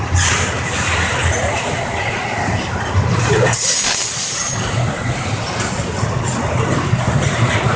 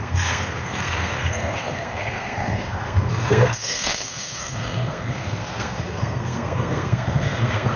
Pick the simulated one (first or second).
second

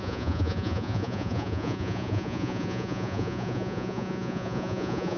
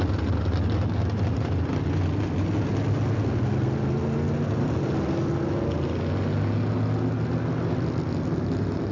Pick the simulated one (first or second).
first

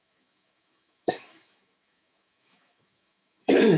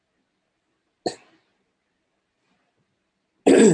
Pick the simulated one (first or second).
first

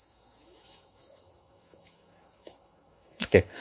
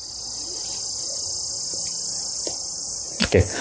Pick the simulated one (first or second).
first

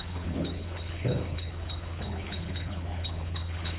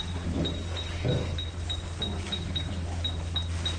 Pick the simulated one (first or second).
first